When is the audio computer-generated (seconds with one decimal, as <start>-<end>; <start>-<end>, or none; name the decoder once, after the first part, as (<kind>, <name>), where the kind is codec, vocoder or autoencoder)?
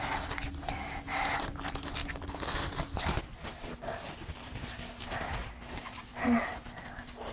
none